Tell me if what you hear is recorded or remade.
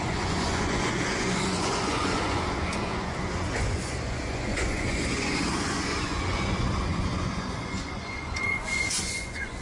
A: remade